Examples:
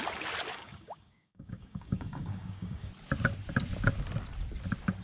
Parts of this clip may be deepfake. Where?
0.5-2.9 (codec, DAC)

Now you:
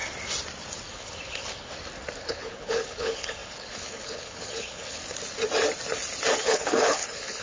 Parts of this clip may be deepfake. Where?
0.9-1.7 (codec, HILCodec); 2.2-5.0; 6.4-7.4

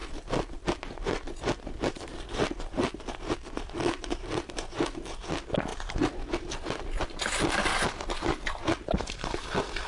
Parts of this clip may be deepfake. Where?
0.0-4.2 (vocoder, BigVGAN v2); 5.7-9.3

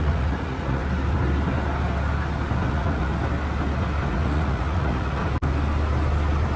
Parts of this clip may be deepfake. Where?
0.0-0.8 (vocoder, Vocos); 2.7-3.1; 4.1-5.2

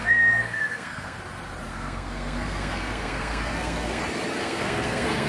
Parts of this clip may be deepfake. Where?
0.0-1.2 (codec, SNAC); 1.7-4.0; 4.4-5.3